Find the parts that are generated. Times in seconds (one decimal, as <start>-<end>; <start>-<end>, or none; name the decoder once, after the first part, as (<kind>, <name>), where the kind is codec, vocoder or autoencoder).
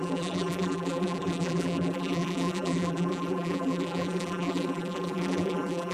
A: 0.0-5.9 (vocoder, BigVGAN v2)